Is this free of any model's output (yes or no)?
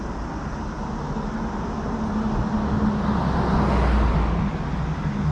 yes